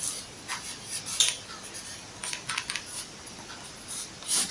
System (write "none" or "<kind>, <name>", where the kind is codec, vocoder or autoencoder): none